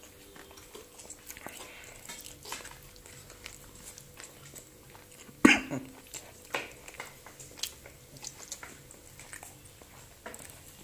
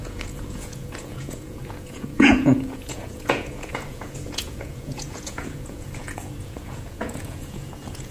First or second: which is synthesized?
second